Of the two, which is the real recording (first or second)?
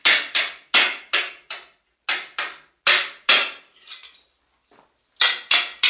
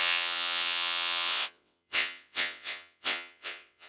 first